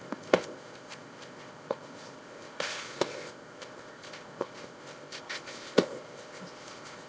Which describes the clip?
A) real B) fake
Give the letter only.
B